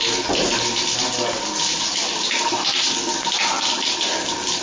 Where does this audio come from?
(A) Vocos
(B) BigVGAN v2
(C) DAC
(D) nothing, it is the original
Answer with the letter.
D